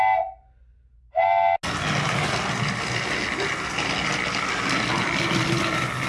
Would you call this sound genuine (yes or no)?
yes